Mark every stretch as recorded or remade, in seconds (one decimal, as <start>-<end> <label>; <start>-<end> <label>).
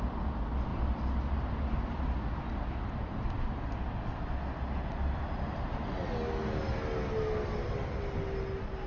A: 0.0-8.9 recorded